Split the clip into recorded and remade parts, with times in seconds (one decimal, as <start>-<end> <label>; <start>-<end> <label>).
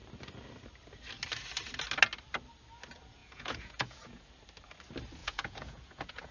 0.0-3.2 recorded; 3.2-4.3 remade; 4.3-5.2 recorded; 5.2-6.3 remade